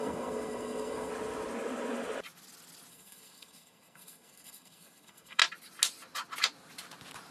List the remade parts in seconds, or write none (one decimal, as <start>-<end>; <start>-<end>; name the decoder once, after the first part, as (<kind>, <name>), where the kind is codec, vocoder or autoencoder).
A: 0.0-1.1 (codec, SNAC); 2.9-5.4